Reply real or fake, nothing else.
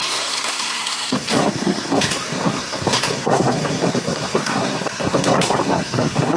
fake